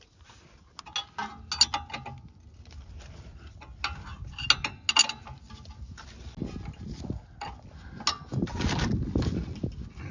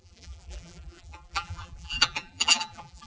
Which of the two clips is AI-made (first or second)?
second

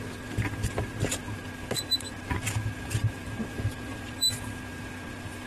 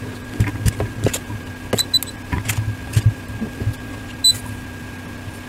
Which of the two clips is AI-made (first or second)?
first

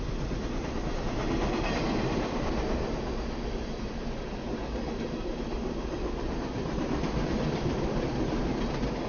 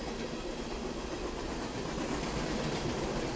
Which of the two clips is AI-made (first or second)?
first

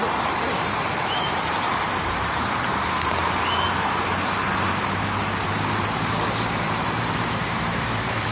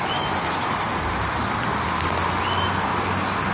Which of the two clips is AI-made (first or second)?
first